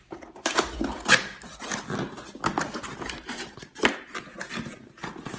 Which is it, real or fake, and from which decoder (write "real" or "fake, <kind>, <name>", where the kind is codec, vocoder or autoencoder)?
real